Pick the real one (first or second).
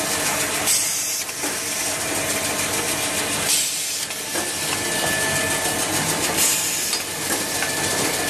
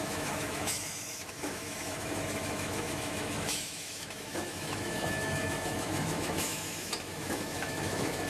first